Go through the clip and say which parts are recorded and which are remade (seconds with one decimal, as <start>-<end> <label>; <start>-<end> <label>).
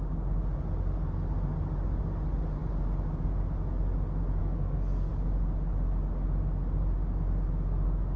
0.0-4.4 recorded; 4.4-5.1 remade; 5.1-8.2 recorded